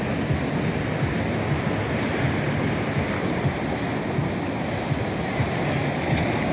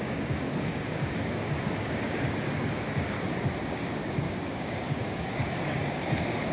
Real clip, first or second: first